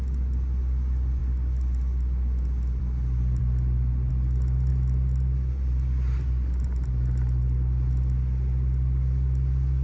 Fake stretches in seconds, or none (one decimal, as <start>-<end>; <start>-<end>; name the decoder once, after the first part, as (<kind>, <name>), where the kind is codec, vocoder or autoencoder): none